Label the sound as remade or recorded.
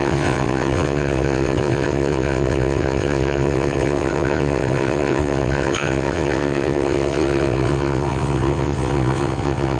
remade